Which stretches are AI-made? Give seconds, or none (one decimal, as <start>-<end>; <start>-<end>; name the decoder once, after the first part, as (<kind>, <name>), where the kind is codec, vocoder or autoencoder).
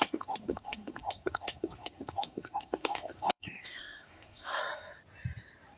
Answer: 0.0-4.6 (codec, SNAC)